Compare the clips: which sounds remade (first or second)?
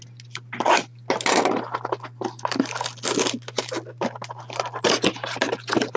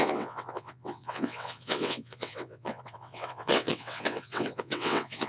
second